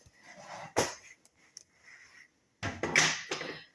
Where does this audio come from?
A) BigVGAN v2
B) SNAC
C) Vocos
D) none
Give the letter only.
D